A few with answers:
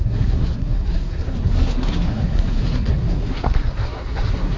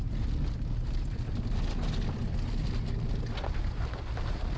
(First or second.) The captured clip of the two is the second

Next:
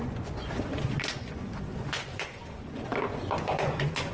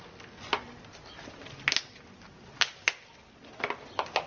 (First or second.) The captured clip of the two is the second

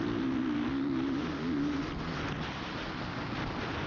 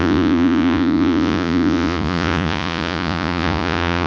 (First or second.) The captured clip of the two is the first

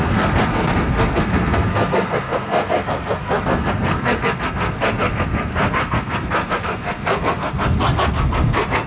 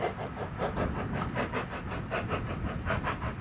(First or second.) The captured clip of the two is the second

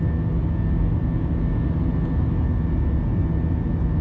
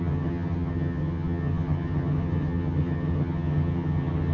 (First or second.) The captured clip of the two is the first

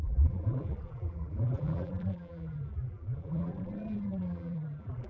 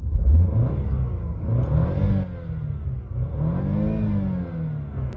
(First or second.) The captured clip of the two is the second